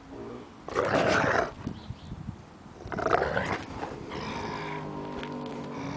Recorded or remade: recorded